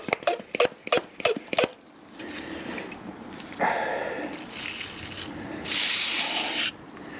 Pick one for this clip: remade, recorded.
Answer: recorded